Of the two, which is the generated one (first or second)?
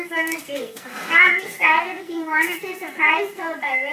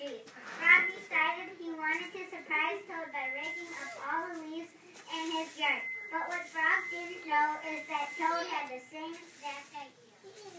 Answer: first